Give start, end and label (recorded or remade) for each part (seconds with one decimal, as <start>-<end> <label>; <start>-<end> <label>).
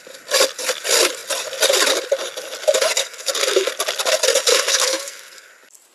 0.0-3.0 recorded; 3.0-3.7 remade; 3.7-4.5 recorded; 4.5-5.5 remade; 5.5-5.9 recorded